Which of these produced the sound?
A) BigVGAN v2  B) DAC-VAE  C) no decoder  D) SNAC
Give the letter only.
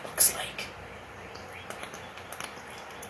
C